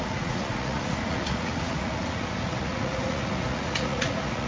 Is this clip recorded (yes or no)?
no